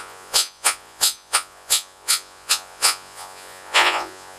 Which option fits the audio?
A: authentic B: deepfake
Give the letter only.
B